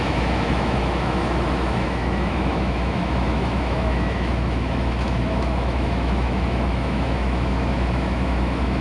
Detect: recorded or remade remade